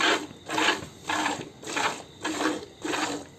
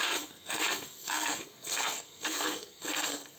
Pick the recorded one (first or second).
first